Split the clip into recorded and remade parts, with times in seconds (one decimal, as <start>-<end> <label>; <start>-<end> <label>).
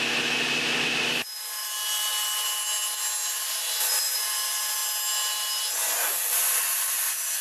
0.0-7.4 recorded